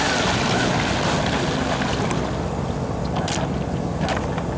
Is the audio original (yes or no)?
yes